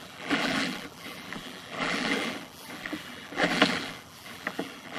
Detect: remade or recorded remade